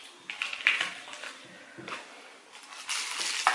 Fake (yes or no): no